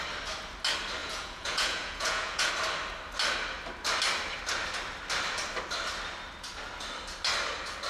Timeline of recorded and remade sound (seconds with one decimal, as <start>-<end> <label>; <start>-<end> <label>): 0.0-1.0 recorded; 1.0-2.5 remade; 2.5-7.9 recorded